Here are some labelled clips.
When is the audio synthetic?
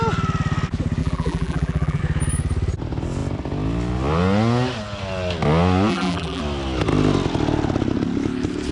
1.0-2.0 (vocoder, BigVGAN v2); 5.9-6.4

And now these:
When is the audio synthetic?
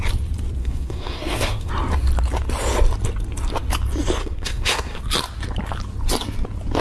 0.6-1.7 (codec, SNAC); 4.2-5.0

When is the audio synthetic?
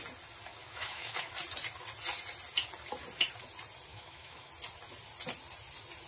0.6-1.3 (autoencoder, DAC-VAE); 3.9-4.5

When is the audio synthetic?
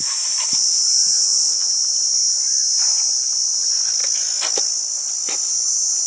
1.0-1.7 (vocoder, Vocos)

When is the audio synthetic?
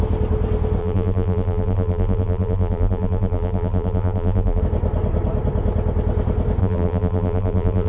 0.8-4.6 (vocoder, BigVGAN v2); 6.6-7.9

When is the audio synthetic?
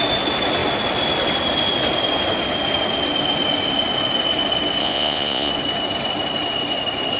4.8-5.5 (vocoder, Vocos)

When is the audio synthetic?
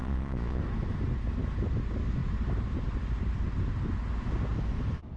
0.0-0.6 (vocoder, Vocos)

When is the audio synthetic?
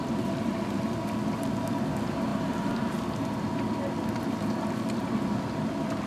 none